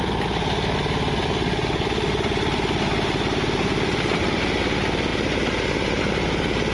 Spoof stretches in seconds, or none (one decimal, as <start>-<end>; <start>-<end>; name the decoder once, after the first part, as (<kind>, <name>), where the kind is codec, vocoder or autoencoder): 1.2-4.4 (vocoder, BigVGAN v2)

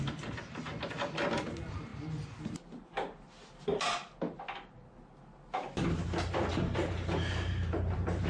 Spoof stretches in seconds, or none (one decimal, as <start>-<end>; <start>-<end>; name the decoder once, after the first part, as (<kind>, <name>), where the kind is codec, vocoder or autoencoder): 6.5-8.3 (vocoder, BigVGAN v2)

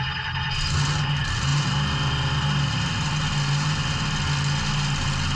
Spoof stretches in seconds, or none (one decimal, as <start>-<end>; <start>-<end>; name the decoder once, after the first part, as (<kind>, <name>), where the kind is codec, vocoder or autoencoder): none

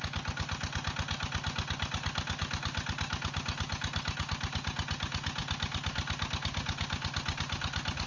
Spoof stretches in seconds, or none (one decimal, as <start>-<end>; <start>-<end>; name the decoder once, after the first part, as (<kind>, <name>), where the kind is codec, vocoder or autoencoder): none

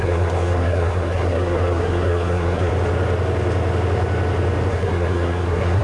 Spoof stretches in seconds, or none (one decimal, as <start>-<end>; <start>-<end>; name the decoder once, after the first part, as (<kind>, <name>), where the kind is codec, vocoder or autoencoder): 0.0-2.7 (codec, SNAC); 4.7-5.8